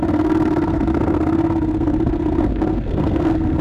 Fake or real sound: fake